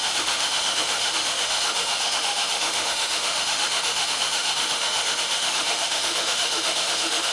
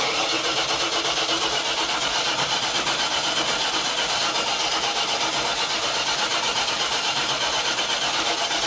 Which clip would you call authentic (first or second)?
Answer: second